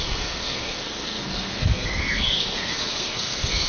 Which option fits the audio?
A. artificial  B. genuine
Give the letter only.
A